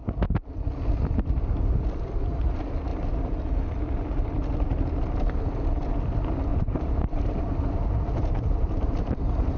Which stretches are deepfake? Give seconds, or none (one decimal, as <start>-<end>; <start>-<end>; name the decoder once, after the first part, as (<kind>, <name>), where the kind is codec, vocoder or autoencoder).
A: 2.9-3.5 (vocoder, BigVGAN v2); 6.5-9.6